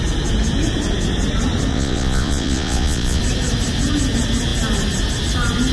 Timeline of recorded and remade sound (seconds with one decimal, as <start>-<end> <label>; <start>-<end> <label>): 0.0-1.7 recorded; 1.7-3.2 remade; 3.2-5.7 recorded